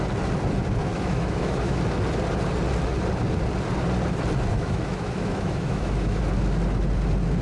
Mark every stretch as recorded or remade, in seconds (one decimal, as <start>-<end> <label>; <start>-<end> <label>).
0.0-0.8 recorded; 0.8-1.8 remade; 1.8-4.5 recorded; 4.5-6.2 remade; 6.2-7.4 recorded